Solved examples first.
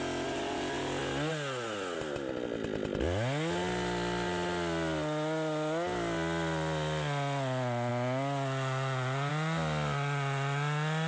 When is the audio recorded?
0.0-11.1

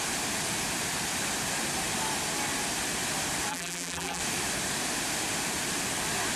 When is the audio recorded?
0.0-3.5; 4.2-6.4

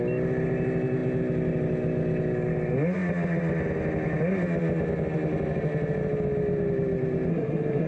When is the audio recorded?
0.0-7.3

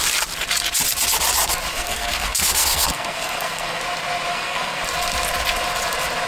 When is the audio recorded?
0.0-1.7; 3.8-4.3; 4.8-6.3

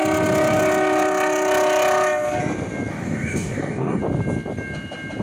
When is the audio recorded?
0.0-2.9; 4.0-5.2

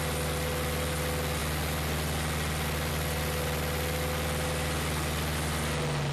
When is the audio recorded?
0.0-6.1